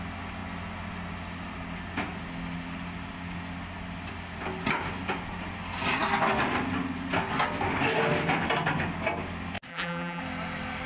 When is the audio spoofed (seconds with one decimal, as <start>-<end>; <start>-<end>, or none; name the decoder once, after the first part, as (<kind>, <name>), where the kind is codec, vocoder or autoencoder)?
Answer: 9.7-10.2 (vocoder, BigVGAN v2)

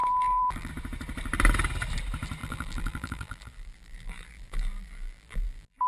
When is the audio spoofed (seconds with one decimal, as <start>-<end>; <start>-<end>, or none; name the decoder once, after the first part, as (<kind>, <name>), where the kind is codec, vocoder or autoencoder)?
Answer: 0.0-0.7 (vocoder, BigVGAN v2); 2.4-5.9

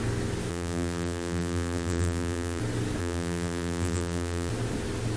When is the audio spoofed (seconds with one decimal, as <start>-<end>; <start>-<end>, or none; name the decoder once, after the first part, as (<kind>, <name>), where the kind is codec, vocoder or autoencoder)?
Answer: 0.5-2.6 (vocoder, BigVGAN v2); 3.0-4.5

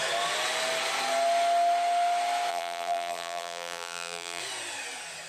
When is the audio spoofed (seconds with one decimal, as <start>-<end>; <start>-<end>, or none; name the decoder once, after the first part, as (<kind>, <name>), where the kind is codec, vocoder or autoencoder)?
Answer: 2.5-4.4 (vocoder, BigVGAN v2)

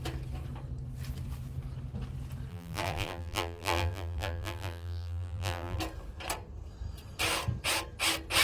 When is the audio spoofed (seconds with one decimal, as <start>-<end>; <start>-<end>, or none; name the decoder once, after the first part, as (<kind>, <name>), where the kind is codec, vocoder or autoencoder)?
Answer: 2.5-5.8 (vocoder, BigVGAN v2)